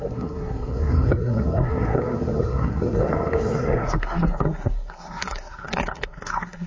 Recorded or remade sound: remade